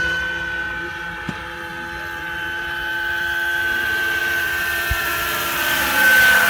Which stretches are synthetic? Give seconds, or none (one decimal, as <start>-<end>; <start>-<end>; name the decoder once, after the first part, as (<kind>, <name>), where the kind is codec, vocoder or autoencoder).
0.0-1.7 (vocoder, BigVGAN v2); 2.2-6.5